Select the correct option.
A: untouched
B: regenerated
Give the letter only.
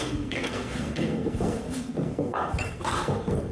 B